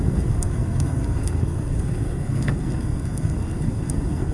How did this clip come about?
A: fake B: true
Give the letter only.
A